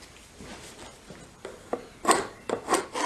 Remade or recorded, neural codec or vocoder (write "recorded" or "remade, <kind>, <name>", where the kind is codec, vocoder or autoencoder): recorded